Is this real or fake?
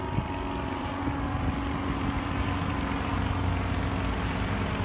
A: real